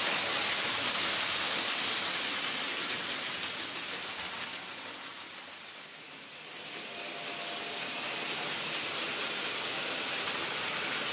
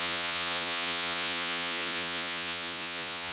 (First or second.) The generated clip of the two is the second